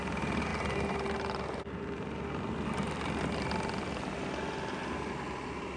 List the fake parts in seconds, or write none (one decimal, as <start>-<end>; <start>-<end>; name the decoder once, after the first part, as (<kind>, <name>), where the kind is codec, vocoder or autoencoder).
none